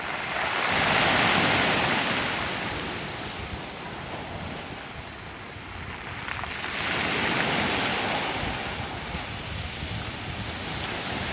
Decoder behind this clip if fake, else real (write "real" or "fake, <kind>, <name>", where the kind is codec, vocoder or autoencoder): real